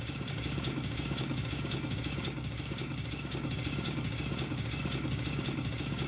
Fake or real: fake